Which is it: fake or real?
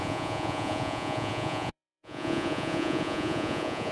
fake